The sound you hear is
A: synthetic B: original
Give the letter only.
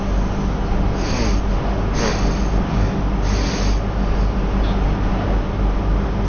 B